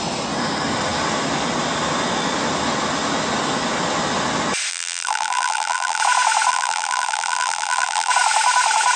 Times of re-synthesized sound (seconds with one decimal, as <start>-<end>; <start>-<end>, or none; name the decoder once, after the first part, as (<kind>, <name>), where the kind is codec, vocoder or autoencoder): 4.7-6.0 (vocoder, BigVGAN v2); 6.5-8.1

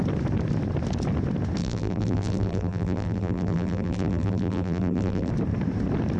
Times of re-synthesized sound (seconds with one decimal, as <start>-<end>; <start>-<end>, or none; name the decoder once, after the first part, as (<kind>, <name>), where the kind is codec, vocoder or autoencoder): 1.6-5.3 (vocoder, BigVGAN v2)

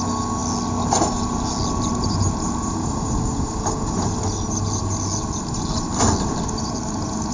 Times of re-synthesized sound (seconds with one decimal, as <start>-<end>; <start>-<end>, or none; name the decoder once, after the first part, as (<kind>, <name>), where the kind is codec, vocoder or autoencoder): none